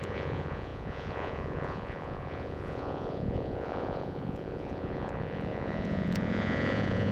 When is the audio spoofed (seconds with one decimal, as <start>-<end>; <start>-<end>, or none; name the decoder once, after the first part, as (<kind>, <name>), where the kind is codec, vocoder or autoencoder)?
0.0-7.1 (vocoder, Vocos)